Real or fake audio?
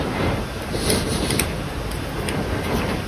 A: real